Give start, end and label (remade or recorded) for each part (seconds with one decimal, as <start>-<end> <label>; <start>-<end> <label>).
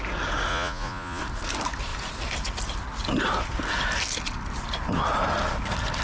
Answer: 0.0-0.5 recorded; 0.5-1.2 remade; 1.2-6.0 recorded